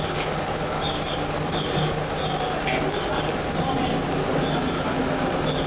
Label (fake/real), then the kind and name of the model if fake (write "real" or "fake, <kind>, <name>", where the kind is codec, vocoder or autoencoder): real